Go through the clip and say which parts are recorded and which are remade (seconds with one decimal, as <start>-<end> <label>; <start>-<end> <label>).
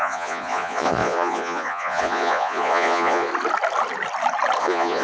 0.0-3.3 remade; 3.3-4.6 recorded; 4.6-5.0 remade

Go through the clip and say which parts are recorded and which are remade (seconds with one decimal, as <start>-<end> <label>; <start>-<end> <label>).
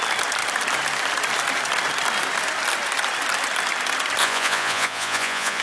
0.0-4.2 recorded; 4.2-5.6 remade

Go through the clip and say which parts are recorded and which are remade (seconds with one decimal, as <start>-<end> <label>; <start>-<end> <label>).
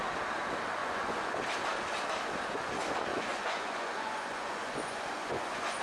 0.0-0.8 recorded; 0.8-1.4 remade; 1.4-3.1 recorded; 3.1-5.8 remade